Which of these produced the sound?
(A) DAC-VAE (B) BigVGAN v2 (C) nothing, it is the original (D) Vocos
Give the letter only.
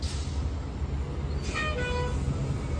C